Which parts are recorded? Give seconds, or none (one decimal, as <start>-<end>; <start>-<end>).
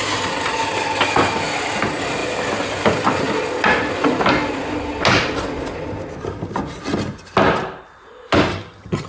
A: 0.0-8.5